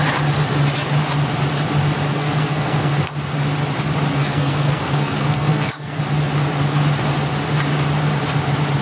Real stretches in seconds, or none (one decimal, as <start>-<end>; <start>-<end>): 0.0-2.1; 3.1-4.2; 6.0-8.8